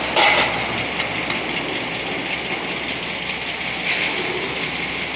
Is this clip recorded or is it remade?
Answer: recorded